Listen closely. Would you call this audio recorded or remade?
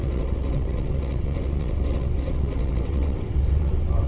remade